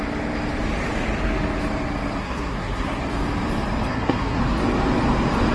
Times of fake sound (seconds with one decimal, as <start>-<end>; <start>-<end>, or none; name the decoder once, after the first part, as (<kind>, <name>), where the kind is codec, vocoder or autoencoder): 2.2-3.0 (codec, SNAC); 3.9-4.4